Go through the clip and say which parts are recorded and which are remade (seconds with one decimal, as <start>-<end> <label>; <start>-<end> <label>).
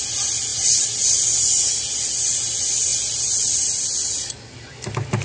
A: 0.0-5.2 recorded